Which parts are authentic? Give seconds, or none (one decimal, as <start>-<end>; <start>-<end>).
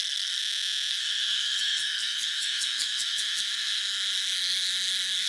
0.4-0.9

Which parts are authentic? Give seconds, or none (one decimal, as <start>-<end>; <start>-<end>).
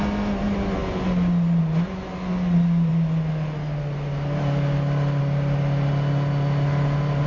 0.0-7.3